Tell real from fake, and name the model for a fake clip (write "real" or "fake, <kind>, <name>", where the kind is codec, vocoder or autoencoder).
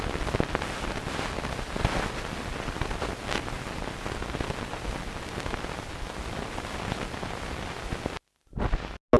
real